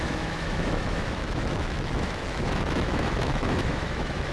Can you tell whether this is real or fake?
fake